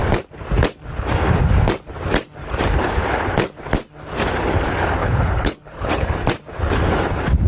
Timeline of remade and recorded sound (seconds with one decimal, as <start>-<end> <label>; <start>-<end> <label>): 0.0-5.0 recorded; 5.0-6.1 remade; 6.1-7.5 recorded